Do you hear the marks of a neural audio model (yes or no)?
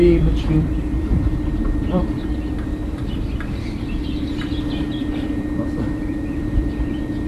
yes